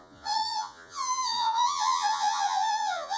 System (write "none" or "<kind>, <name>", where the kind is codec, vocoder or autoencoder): vocoder, Vocos